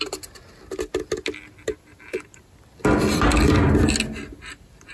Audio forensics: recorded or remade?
recorded